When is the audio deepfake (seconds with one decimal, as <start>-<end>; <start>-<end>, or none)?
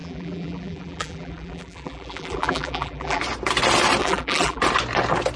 0.0-3.2; 4.0-4.6